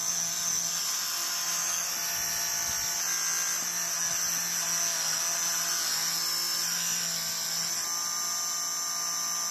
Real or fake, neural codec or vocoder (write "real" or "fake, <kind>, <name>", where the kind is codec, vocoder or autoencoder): real